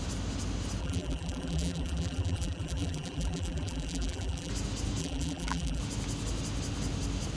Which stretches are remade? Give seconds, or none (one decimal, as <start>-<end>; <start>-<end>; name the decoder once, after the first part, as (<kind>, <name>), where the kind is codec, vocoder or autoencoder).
0.8-4.5 (vocoder, BigVGAN v2); 5.0-5.8

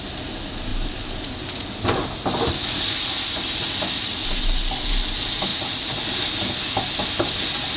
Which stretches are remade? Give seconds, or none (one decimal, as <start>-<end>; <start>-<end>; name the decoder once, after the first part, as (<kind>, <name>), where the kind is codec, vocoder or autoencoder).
0.7-1.3 (vocoder, BigVGAN v2)

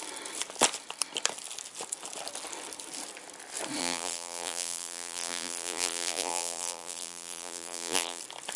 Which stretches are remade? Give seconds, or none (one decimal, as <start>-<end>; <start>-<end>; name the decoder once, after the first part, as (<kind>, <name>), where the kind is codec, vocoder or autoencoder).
3.8-8.2 (vocoder, BigVGAN v2)